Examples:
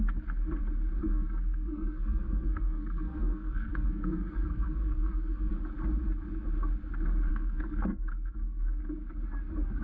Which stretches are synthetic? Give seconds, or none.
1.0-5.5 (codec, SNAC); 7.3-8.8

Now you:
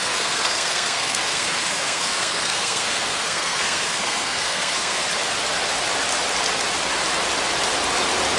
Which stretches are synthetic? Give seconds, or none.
0.0-5.0 (codec, SNAC)

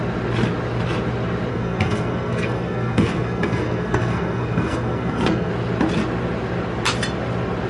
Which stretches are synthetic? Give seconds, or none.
1.5-5.5 (codec, SNAC)

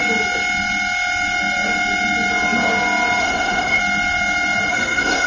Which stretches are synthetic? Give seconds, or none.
3.2-3.8 (codec, SNAC); 4.7-5.3